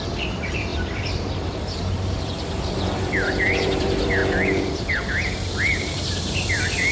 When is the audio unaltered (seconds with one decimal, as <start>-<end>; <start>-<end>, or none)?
none